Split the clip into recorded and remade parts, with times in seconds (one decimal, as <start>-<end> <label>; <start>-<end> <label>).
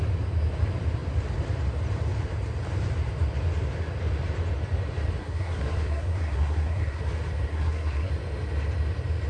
0.0-5.2 recorded; 5.2-7.0 remade; 7.0-7.5 recorded; 7.5-8.1 remade; 8.1-9.3 recorded